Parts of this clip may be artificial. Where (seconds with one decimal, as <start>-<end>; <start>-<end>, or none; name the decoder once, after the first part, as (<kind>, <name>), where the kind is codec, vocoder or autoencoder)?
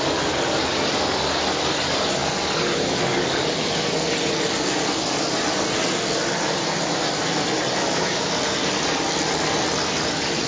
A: 7.8-8.3 (autoencoder, DAC-VAE)